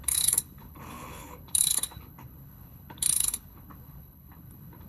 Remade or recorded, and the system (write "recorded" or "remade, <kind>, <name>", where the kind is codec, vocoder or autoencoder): remade, codec, HILCodec